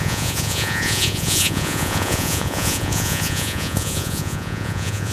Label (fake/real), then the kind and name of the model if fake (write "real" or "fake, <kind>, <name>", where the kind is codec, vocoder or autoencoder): fake, vocoder, Vocos